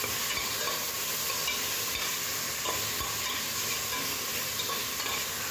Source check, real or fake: real